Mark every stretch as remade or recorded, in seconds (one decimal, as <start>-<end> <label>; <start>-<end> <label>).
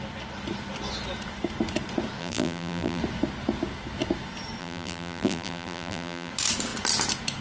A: 0.0-2.2 recorded; 2.2-3.0 remade; 3.0-4.6 recorded; 4.6-6.3 remade; 6.3-7.4 recorded